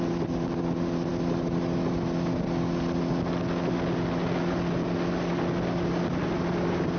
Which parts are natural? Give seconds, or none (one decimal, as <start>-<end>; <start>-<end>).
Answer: 0.0-7.0